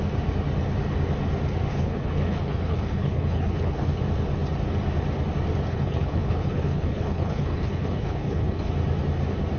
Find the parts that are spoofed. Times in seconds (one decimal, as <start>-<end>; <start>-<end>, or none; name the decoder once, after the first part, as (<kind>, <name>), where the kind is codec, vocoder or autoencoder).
1.7-4.0 (codec, HILCodec); 5.7-8.6